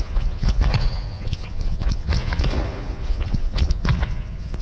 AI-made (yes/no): yes